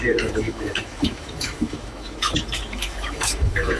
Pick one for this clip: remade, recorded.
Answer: remade